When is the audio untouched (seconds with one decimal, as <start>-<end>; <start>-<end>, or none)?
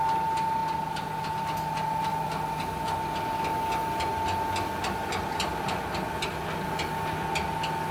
0.0-7.9